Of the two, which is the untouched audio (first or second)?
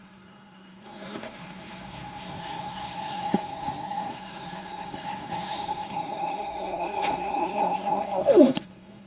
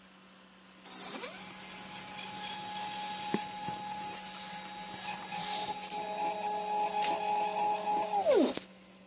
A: second